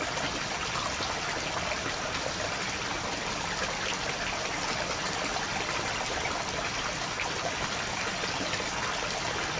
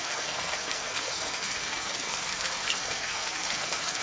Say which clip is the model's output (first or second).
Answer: second